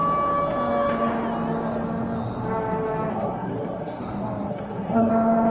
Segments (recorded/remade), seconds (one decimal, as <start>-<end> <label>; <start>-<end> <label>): 0.0-3.1 recorded; 3.1-4.0 remade; 4.0-4.5 recorded; 4.5-5.1 remade; 5.1-5.5 recorded